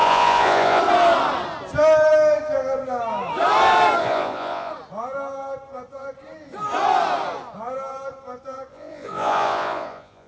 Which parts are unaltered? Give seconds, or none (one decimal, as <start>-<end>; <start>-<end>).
0.8-4.0; 4.7-8.7